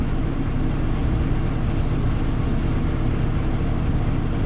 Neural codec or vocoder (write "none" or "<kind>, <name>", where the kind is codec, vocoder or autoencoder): none